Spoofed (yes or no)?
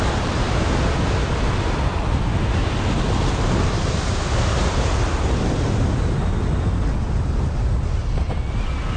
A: no